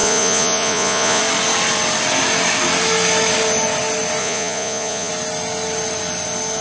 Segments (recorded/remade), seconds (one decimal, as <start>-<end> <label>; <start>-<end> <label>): 0.0-1.2 remade; 1.2-4.2 recorded; 4.2-5.1 remade; 5.1-6.6 recorded